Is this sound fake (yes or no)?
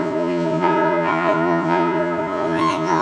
yes